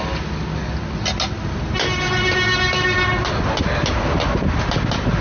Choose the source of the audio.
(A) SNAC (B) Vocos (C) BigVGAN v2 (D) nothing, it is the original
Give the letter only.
D